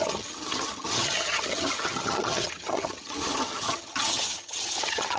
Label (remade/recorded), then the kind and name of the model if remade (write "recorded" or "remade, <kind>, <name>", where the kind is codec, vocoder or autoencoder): remade, vocoder, HiFi-GAN